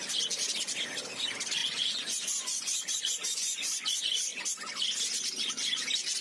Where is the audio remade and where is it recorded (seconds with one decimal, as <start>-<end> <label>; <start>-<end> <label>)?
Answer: 0.0-1.6 recorded; 1.6-3.9 remade; 3.9-6.2 recorded